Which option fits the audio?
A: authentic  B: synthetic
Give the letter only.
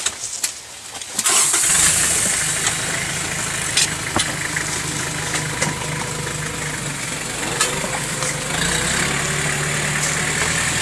A